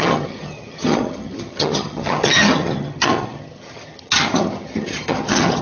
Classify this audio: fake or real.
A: fake